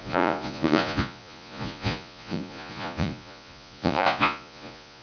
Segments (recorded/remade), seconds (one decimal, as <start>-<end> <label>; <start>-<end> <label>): 0.0-5.0 remade